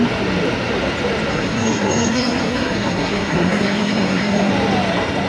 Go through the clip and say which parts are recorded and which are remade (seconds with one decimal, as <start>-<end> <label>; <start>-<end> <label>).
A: 0.0-1.3 recorded; 1.3-4.5 remade; 4.5-5.3 recorded